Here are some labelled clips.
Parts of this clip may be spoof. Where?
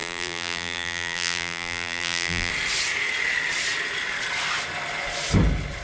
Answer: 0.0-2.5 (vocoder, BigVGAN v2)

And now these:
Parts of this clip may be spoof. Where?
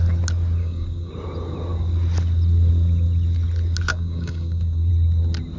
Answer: 0.6-1.1 (codec, DAC); 3.9-4.9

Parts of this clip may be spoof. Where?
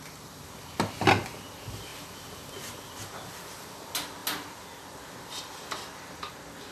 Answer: none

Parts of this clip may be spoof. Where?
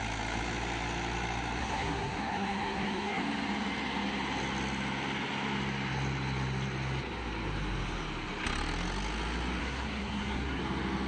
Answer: 1.6-3.2 (codec, SNAC); 9.6-10.6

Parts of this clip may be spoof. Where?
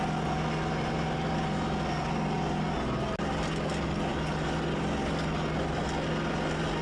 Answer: none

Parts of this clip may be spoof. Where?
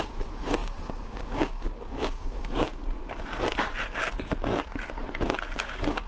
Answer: 0.0-2.8 (codec, DAC); 5.6-6.1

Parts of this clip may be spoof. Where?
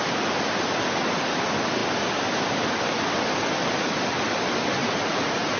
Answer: 4.8-5.6 (vocoder, Vocos)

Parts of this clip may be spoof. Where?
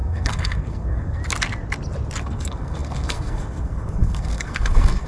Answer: 0.0-1.2 (codec, SNAC); 2.2-5.1